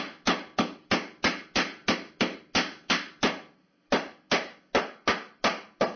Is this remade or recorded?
recorded